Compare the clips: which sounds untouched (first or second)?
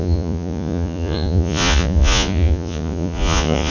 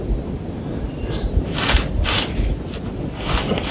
second